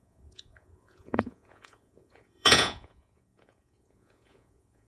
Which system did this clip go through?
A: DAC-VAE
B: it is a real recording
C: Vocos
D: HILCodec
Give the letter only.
C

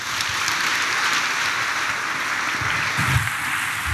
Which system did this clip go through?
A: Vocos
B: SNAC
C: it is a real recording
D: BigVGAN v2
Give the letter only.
C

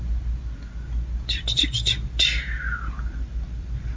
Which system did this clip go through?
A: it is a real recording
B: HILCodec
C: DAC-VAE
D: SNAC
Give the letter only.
A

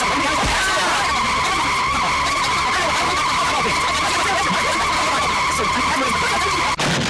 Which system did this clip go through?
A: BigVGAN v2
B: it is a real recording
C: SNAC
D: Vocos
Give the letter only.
B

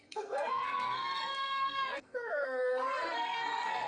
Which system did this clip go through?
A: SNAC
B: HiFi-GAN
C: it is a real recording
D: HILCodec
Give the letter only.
A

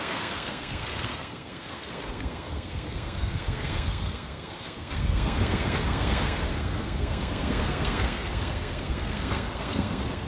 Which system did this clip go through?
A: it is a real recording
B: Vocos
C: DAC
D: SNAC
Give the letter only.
D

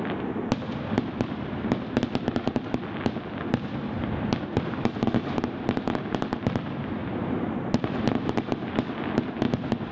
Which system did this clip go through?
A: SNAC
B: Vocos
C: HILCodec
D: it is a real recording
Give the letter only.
D